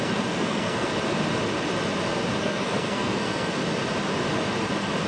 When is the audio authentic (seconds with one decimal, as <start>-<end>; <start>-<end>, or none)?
0.9-2.4; 3.6-5.1